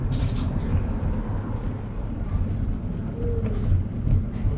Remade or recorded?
recorded